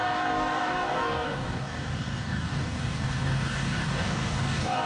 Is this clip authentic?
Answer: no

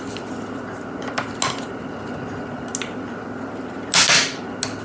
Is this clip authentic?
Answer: yes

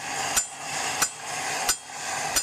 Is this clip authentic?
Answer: yes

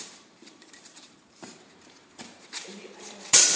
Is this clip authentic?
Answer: no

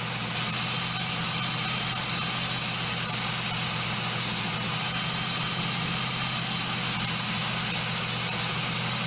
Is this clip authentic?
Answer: yes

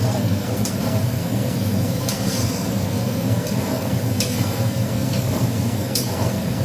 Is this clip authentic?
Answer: no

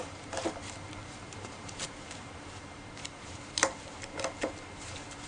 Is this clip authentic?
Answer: no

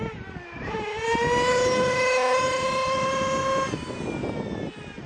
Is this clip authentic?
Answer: yes